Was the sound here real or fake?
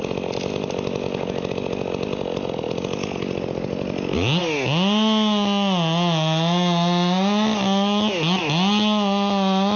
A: real